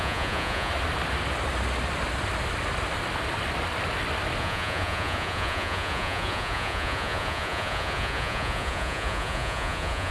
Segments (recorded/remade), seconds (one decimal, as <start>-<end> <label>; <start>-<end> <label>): 0.0-0.7 remade; 0.7-4.4 recorded; 4.4-10.1 remade